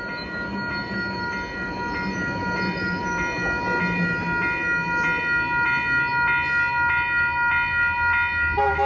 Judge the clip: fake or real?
real